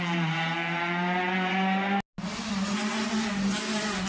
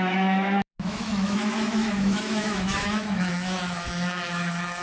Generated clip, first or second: second